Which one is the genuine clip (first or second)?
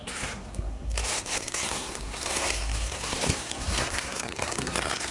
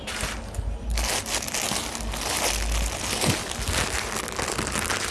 second